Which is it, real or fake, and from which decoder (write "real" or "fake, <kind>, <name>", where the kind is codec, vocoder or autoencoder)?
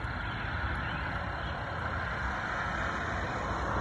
real